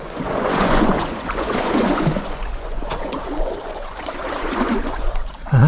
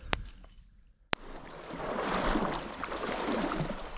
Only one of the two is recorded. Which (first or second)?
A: second